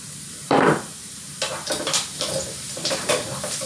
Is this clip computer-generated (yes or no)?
yes